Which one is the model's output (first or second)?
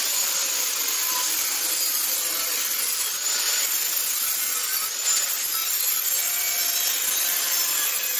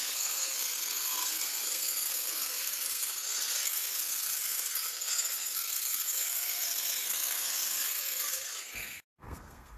second